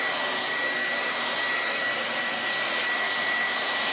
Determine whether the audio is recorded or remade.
recorded